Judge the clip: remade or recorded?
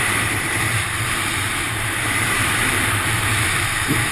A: remade